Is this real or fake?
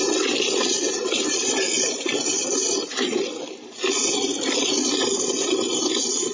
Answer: real